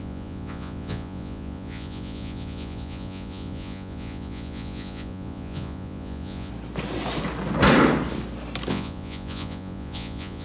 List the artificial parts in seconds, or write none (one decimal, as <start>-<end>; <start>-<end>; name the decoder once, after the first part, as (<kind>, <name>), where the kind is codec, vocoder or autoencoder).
0.0-6.5 (vocoder, Vocos); 8.7-10.4